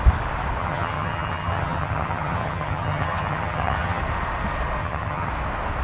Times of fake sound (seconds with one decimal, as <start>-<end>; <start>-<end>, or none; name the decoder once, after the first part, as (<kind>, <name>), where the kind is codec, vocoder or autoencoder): 0.6-4.0 (vocoder, HiFi-GAN); 4.8-5.3